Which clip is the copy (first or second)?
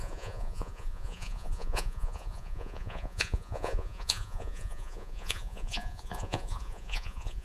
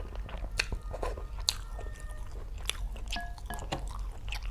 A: first